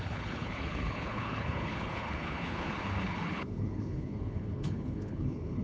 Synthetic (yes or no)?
yes